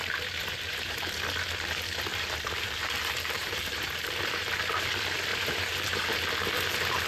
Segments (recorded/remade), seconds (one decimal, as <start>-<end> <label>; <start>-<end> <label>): 0.0-0.4 recorded; 0.4-1.1 remade; 1.1-2.1 recorded; 2.1-4.6 remade; 4.6-5.3 recorded; 5.3-6.0 remade; 6.0-7.1 recorded